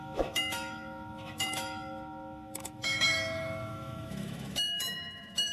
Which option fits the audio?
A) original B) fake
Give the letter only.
B